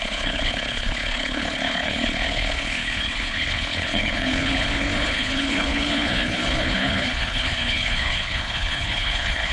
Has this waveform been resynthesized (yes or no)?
yes